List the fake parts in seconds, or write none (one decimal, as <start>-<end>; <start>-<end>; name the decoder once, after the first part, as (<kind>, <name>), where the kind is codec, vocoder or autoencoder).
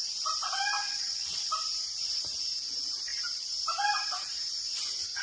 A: 0.8-1.5 (vocoder, WaveNeXt)